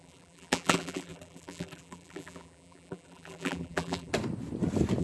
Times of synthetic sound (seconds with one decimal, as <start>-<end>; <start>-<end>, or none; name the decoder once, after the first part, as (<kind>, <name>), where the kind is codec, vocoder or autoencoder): 0.0-4.1 (vocoder, BigVGAN v2)

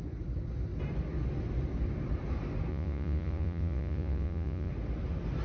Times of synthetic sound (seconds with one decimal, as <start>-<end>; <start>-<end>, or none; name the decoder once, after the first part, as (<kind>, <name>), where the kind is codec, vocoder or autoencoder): 2.7-4.7 (vocoder, Vocos)